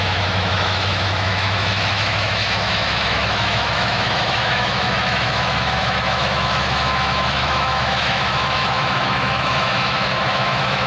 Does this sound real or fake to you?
fake